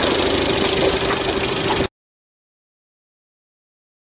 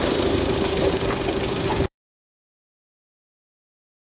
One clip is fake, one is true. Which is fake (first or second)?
second